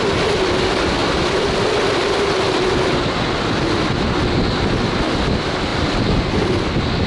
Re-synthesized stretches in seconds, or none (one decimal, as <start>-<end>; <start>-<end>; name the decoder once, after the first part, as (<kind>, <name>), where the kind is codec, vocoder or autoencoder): none